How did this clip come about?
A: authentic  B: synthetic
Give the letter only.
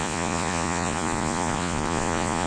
B